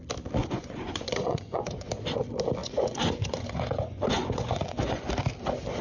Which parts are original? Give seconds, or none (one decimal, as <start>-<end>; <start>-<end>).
0.0-0.4; 1.9-2.6; 5.1-5.8

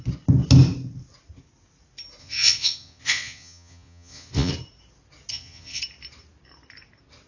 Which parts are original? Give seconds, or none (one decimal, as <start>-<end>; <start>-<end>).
0.0-2.2; 4.5-5.3; 5.8-7.3

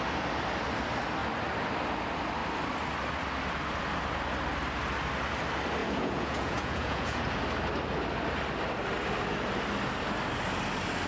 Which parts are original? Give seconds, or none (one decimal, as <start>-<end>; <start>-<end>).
0.0-5.8; 7.4-11.1

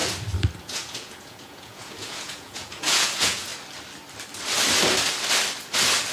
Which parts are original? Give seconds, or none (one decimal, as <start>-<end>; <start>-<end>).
0.0-0.6; 3.5-6.1